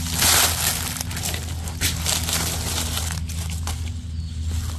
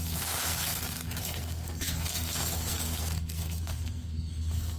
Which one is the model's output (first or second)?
second